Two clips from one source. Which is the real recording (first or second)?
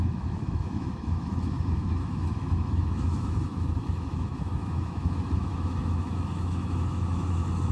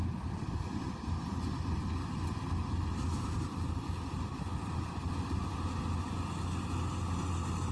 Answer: second